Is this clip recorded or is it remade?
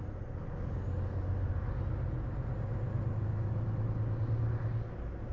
recorded